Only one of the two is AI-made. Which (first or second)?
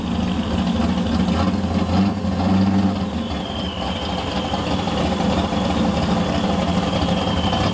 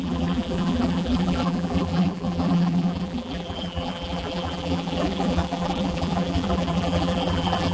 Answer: second